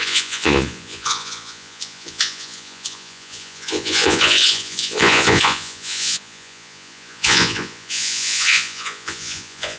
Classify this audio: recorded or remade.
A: remade